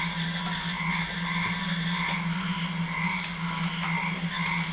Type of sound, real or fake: real